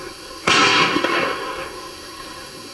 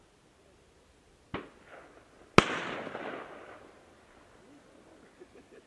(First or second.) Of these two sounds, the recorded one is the second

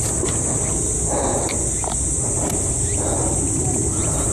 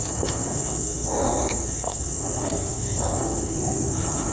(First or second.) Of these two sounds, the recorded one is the first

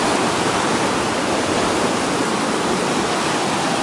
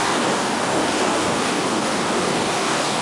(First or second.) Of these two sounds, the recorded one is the first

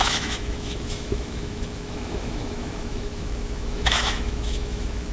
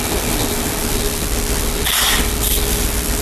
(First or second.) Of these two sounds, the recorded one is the second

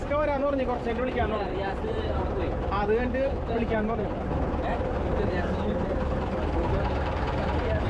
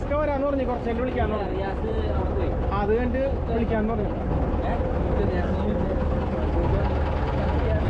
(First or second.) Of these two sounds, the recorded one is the second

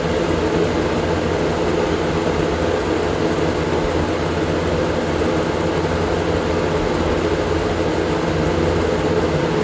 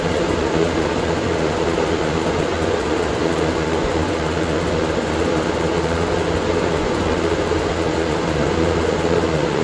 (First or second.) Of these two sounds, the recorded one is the first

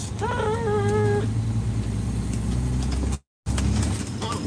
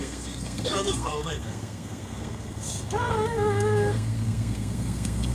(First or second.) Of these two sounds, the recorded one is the first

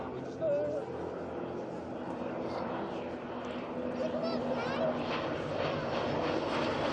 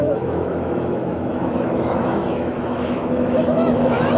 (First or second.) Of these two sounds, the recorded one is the first